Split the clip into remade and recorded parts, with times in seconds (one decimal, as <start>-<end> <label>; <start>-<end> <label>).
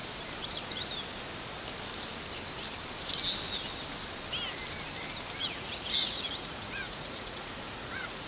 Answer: 0.0-5.4 recorded; 5.4-8.3 remade